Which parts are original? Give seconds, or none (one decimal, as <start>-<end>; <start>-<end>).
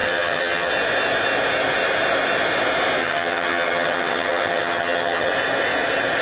0.7-3.0; 5.3-6.2